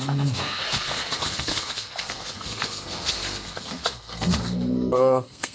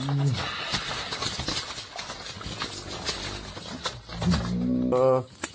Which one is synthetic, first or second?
first